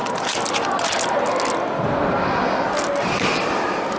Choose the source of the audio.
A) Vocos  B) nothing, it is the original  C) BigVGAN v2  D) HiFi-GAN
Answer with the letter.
B